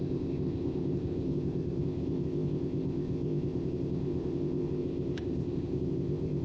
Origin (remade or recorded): remade